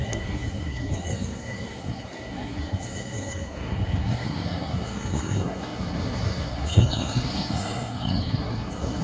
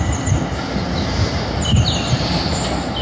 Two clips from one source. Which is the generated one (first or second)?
first